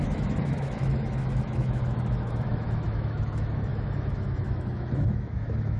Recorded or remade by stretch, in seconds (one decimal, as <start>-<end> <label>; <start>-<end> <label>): 0.0-5.8 remade